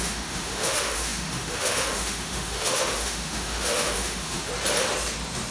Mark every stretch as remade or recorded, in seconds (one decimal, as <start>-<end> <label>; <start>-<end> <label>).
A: 0.0-4.5 remade; 4.5-5.5 recorded